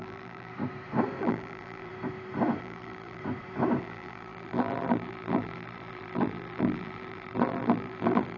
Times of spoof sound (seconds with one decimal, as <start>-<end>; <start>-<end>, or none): 0.0-0.5; 1.2-1.9; 2.6-3.2; 3.8-8.4